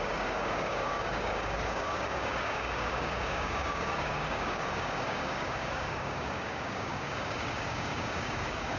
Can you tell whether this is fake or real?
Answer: fake